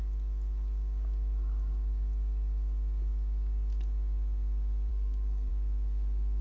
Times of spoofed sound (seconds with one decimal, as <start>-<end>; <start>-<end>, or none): 4.9-5.5